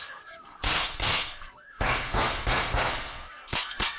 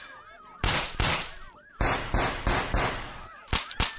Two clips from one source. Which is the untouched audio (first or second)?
second